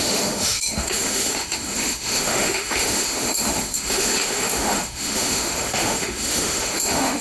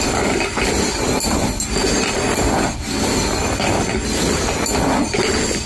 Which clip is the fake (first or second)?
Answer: first